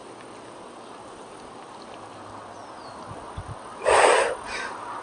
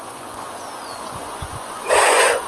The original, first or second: first